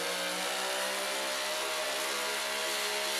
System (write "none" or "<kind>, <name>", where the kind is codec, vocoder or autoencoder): none